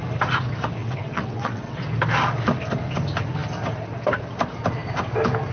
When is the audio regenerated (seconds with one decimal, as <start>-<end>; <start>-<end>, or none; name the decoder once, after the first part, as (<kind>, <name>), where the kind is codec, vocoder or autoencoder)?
0.8-1.8 (vocoder, WaveNeXt)

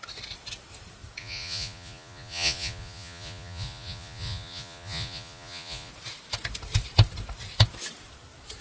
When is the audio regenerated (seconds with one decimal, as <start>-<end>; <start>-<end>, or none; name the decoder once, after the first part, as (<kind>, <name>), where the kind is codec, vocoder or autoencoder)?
1.2-5.9 (vocoder, Vocos)

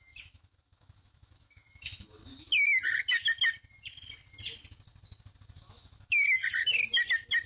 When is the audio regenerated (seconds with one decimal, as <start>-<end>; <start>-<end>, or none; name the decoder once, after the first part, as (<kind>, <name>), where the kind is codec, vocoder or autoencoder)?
0.0-2.3 (autoencoder, DAC-VAE); 5.6-6.4

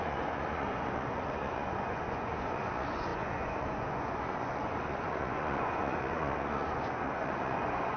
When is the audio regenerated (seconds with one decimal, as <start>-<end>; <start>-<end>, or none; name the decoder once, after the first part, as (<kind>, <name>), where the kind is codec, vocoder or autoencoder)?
0.0-8.0 (vocoder, Vocos)